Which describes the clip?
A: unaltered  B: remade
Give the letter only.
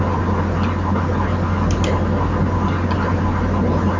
A